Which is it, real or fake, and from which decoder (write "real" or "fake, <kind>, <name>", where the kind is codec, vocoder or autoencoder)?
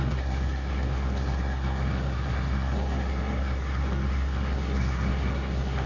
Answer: fake, codec, SNAC